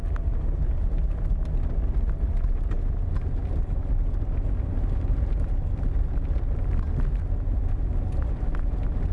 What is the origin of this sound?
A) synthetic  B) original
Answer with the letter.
B